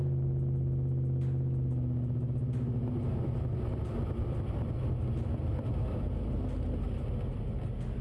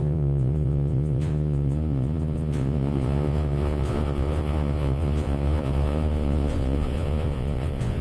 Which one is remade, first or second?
second